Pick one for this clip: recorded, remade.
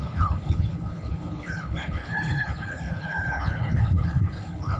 remade